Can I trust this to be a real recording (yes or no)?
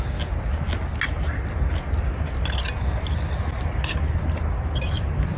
yes